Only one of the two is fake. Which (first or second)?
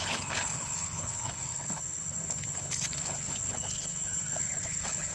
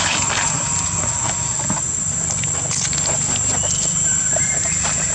first